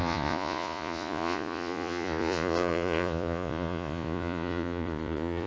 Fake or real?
fake